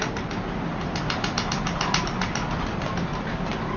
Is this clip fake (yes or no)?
no